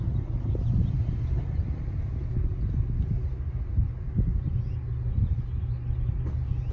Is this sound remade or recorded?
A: recorded